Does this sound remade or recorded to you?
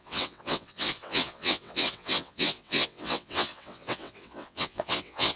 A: remade